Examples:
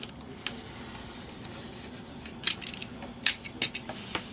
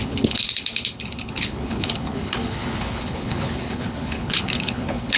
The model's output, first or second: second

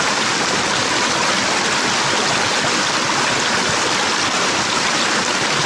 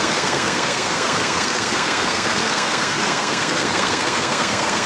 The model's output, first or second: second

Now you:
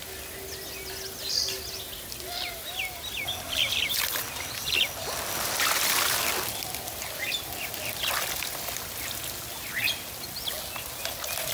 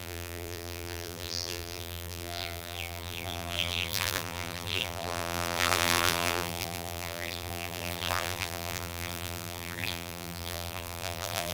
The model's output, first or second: second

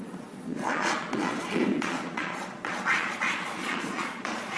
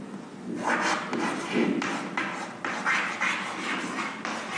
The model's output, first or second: first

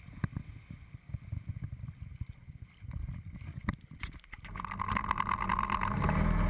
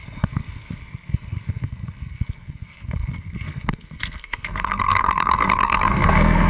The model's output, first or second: second